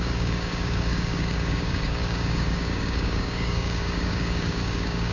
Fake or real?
fake